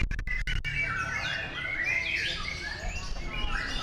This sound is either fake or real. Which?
real